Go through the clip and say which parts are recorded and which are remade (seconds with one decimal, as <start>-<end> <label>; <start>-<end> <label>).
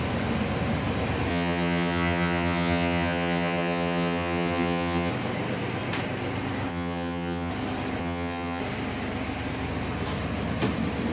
0.0-1.3 recorded; 1.3-5.1 remade; 5.1-6.7 recorded; 6.7-7.5 remade; 7.5-8.0 recorded; 8.0-8.6 remade; 8.6-11.1 recorded